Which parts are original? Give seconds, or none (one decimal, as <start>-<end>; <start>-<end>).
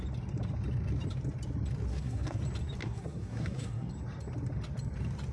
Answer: 0.0-1.9; 2.4-2.8; 3.9-5.3